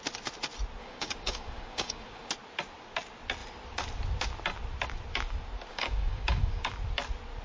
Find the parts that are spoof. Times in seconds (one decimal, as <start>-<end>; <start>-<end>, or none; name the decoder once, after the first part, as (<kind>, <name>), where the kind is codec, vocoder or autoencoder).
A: 0.8-2.3 (codec, DAC); 5.7-6.7